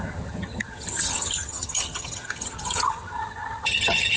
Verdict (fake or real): fake